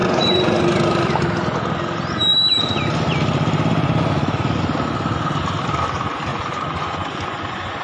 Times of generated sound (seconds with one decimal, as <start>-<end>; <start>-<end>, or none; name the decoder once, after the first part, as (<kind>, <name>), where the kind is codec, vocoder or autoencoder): 0.0-0.8 (vocoder, Vocos); 6.3-7.8